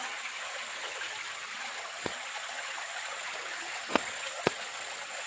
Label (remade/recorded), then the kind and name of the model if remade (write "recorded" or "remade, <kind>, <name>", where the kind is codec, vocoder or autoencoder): remade, vocoder, HiFi-GAN